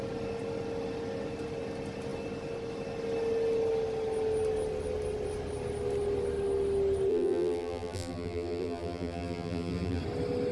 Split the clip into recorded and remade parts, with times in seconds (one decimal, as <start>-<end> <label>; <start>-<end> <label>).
0.0-7.1 recorded; 7.1-10.0 remade; 10.0-10.5 recorded